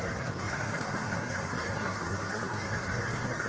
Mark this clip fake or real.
fake